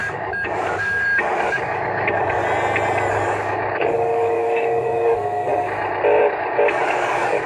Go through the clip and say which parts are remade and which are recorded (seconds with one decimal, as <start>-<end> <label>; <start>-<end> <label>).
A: 0.0-2.4 remade; 2.4-3.1 recorded; 3.1-5.5 remade; 5.5-6.2 recorded; 6.2-7.5 remade